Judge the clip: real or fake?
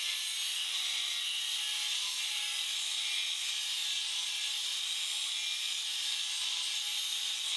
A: real